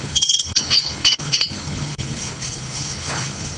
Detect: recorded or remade remade